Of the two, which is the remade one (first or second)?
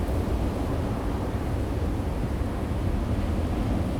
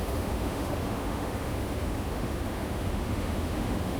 second